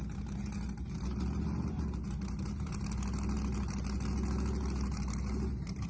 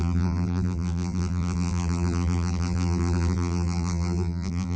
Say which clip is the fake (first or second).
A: second